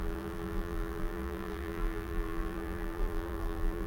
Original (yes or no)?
no